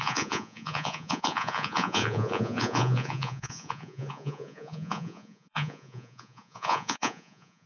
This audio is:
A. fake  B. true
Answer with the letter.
A